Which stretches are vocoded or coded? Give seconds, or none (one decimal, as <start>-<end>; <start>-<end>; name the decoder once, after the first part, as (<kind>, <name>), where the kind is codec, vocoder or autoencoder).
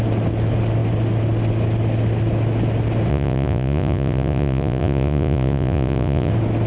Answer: 3.1-6.3 (vocoder, Vocos)